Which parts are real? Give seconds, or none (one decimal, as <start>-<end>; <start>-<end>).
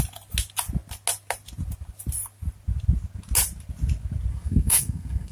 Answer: 0.0-4.3